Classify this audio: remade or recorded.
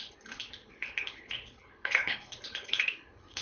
remade